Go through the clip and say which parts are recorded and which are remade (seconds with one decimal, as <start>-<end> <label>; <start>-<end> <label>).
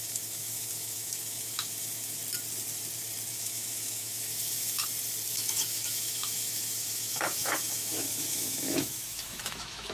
0.0-2.2 remade; 2.2-3.3 recorded; 3.3-4.8 remade; 4.8-5.3 recorded; 5.3-9.9 remade